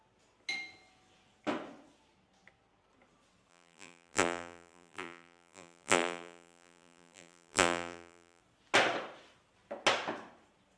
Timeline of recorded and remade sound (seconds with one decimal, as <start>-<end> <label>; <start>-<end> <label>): 0.0-3.5 recorded; 3.5-8.4 remade; 8.4-10.8 recorded